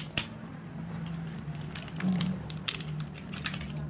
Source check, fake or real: fake